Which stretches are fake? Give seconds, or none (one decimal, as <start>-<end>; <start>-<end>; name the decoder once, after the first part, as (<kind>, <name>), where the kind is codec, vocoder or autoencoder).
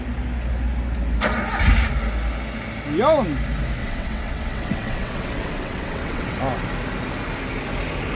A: 3.8-6.4 (vocoder, WaveNeXt)